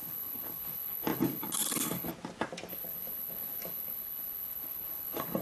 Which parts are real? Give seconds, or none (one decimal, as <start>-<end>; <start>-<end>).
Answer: 2.1-2.7